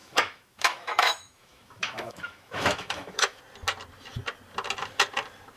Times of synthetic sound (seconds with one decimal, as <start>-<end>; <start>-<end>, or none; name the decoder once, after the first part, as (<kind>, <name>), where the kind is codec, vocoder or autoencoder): 0.0-3.4 (autoencoder, DAC-VAE)